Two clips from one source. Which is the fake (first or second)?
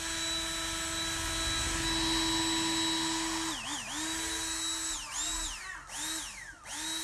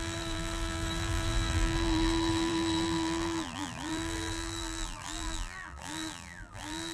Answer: second